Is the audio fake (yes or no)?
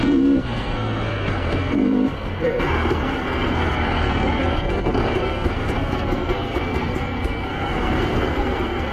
yes